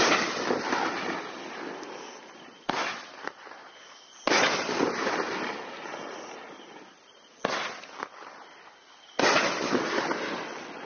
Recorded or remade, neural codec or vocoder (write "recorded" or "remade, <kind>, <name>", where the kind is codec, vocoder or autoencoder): recorded